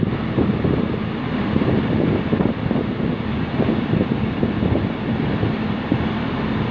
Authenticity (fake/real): fake